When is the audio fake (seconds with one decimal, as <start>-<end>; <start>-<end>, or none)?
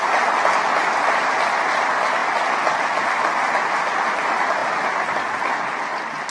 none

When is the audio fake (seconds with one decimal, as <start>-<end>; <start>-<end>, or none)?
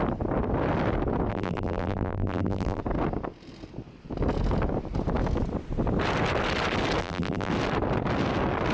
1.3-2.8; 7.0-7.5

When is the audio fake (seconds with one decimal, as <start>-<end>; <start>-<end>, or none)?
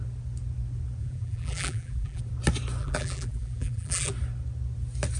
1.0-2.2; 2.8-4.1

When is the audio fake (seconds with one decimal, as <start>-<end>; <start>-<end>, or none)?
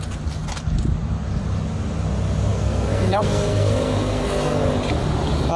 2.5-4.6